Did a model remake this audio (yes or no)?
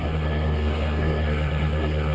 yes